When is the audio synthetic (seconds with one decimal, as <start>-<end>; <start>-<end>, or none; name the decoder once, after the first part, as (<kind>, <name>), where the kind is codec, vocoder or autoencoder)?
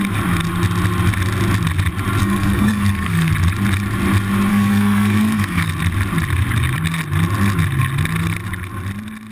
2.2-3.3 (codec, SNAC); 4.5-5.7